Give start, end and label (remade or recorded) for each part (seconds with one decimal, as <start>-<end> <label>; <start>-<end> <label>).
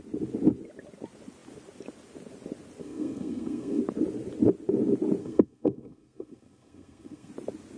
0.0-2.8 recorded; 2.8-3.8 remade; 3.8-5.2 recorded; 5.2-7.3 remade; 7.3-7.8 recorded